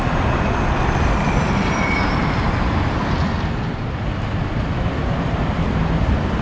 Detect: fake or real real